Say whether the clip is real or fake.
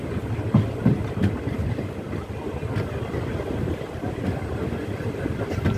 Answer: real